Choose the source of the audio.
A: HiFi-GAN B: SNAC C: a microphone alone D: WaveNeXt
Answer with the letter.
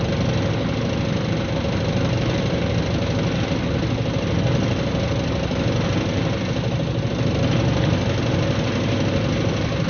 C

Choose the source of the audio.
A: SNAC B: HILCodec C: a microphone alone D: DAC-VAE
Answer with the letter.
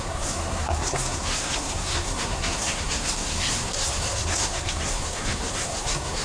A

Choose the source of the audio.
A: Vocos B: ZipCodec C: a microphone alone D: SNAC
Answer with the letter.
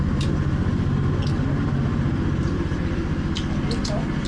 C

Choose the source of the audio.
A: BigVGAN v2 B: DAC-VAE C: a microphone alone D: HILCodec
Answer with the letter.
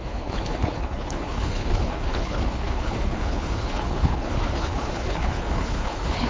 D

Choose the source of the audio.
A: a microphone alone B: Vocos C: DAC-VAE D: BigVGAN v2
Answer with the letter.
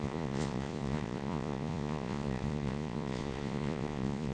B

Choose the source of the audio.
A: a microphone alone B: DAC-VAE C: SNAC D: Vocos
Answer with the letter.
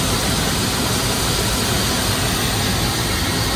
A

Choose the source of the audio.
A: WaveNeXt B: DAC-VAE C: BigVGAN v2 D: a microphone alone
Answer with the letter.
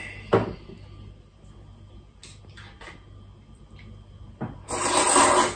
D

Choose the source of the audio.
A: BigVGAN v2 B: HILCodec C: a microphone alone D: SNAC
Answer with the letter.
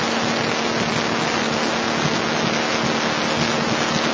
C